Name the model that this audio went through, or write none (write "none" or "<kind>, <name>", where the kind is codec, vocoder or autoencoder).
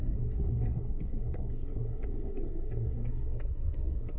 codec, SNAC